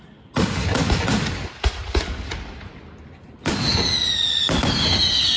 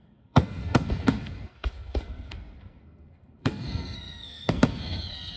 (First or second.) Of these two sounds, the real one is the first